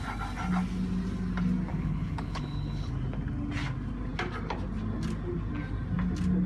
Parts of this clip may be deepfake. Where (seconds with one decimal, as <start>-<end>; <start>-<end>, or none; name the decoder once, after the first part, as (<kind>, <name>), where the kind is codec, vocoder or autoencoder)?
1.7-2.9 (codec, HILCodec)